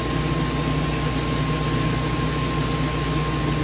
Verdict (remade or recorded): recorded